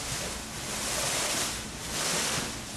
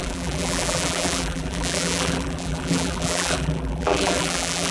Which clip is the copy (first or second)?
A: second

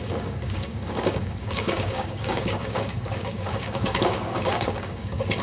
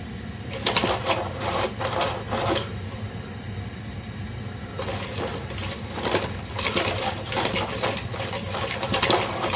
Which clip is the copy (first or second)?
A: first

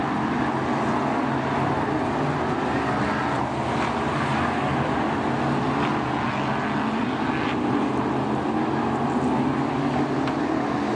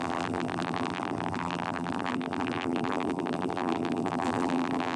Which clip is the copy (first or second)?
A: second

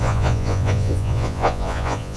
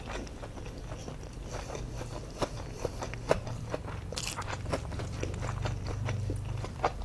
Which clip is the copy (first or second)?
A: first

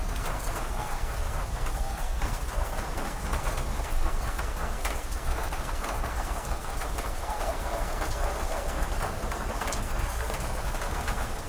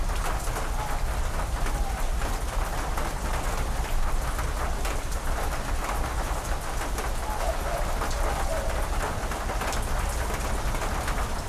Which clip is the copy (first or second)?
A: first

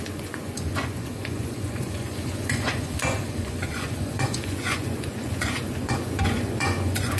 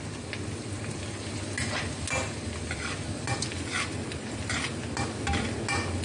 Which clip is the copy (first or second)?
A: first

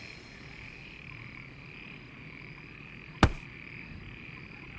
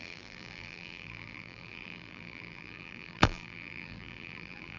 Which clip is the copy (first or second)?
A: second